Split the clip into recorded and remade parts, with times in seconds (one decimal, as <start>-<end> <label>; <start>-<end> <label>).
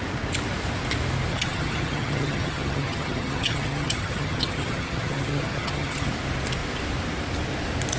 0.0-1.3 recorded; 1.3-6.1 remade; 6.1-8.0 recorded